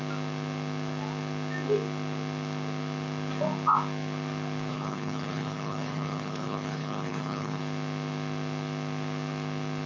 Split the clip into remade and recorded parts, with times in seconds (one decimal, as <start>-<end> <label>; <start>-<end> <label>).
0.0-4.7 recorded; 4.7-7.6 remade; 7.6-9.9 recorded